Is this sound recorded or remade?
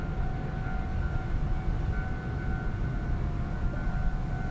recorded